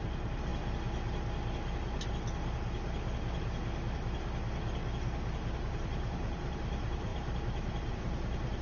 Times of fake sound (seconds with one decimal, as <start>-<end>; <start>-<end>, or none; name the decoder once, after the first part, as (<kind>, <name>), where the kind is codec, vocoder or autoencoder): 0.0-0.5 (vocoder, BigVGAN v2); 5.6-8.6